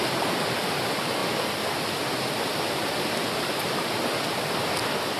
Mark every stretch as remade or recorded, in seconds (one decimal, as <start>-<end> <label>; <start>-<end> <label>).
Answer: 0.0-5.2 recorded